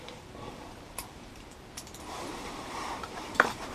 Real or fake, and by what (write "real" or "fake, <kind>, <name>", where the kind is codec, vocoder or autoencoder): fake, vocoder, BigVGAN v2